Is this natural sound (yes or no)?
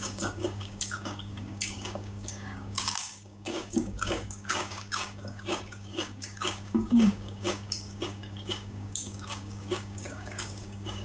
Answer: no